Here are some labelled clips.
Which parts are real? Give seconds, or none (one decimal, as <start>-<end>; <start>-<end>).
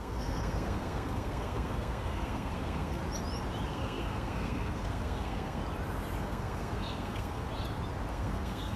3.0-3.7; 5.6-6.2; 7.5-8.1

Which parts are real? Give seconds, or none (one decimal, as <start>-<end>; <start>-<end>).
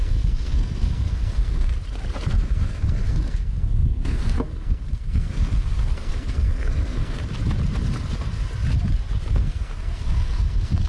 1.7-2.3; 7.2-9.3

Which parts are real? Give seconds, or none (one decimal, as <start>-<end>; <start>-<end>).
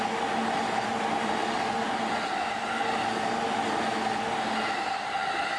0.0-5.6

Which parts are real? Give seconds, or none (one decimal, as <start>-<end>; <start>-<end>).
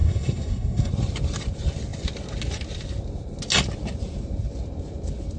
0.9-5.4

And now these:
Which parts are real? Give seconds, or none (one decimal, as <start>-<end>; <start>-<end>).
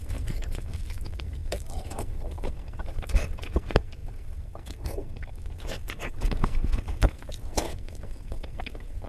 none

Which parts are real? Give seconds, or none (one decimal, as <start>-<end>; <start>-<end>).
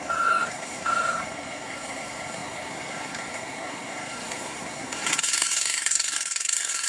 none